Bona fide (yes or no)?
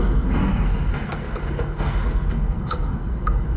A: no